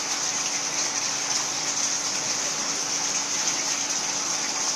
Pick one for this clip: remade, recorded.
recorded